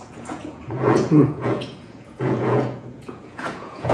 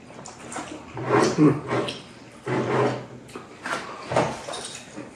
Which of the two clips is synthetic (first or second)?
first